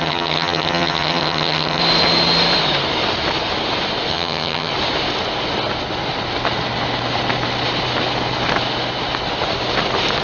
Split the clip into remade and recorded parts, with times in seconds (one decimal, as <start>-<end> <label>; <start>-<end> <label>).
0.0-1.8 remade; 1.8-4.1 recorded; 4.1-4.7 remade; 4.7-10.2 recorded